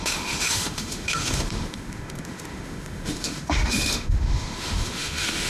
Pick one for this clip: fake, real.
fake